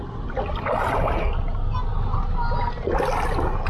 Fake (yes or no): no